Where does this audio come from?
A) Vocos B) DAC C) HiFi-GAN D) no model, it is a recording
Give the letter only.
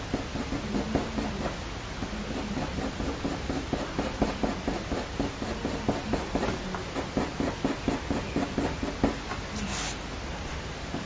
D